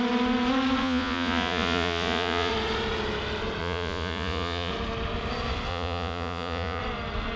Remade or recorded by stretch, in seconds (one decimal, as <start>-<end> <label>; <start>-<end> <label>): 0.0-0.8 recorded; 0.8-2.5 remade; 2.5-3.6 recorded; 3.6-4.7 remade; 4.7-5.7 recorded; 5.7-6.8 remade; 6.8-7.4 recorded